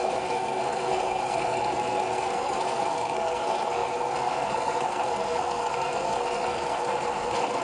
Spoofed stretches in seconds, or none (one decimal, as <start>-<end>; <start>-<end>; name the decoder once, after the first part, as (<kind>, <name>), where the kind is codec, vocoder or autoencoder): 0.0-7.6 (codec, SNAC)